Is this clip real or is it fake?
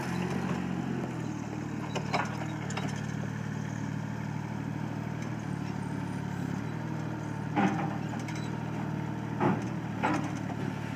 real